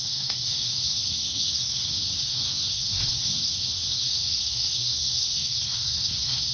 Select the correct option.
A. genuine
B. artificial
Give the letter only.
B